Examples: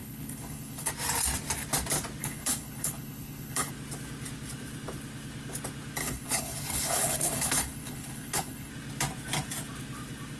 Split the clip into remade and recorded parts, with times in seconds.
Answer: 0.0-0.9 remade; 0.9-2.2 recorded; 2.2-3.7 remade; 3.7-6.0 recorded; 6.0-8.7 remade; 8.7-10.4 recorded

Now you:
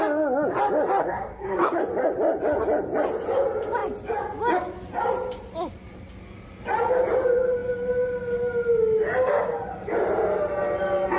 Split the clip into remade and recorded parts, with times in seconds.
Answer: 0.0-1.0 recorded; 1.0-1.8 remade; 1.8-11.2 recorded

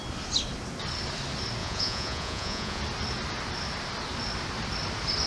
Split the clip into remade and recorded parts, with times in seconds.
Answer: 0.0-1.6 recorded; 1.6-2.8 remade; 2.8-5.3 recorded

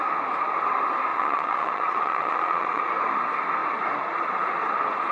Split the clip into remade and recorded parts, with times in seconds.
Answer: 0.0-1.1 recorded; 1.1-2.8 remade; 2.8-5.1 recorded

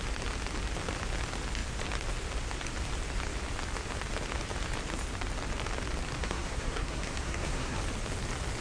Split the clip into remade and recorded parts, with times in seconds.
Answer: 0.0-6.2 recorded; 6.2-7.8 remade; 7.8-8.6 recorded

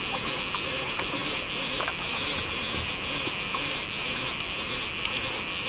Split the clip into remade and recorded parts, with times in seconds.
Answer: 0.0-5.7 recorded